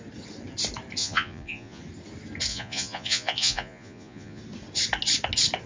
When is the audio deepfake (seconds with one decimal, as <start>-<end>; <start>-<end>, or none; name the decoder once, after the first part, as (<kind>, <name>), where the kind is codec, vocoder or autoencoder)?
1.0-1.8 (vocoder, Vocos); 2.5-4.4